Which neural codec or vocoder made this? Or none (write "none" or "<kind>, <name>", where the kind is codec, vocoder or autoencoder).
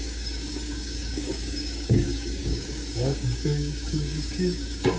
codec, DAC